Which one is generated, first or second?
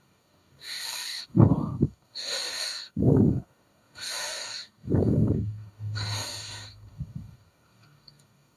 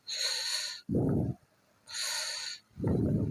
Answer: first